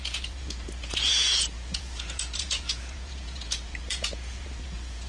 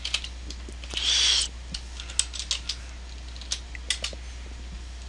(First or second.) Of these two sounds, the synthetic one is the first